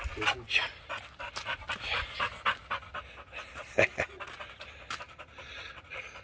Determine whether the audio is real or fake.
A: real